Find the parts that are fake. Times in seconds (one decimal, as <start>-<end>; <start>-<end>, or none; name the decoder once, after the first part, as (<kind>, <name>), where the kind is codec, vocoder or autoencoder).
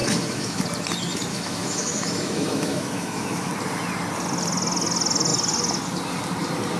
0.0-0.6 (autoencoder, DAC-VAE); 1.3-3.5